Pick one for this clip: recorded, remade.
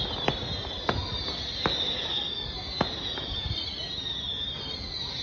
recorded